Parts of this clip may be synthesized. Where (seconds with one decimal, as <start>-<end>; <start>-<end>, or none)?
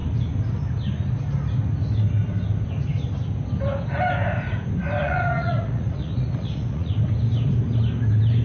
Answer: 5.0-7.0